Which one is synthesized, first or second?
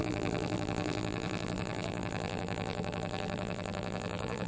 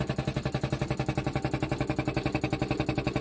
first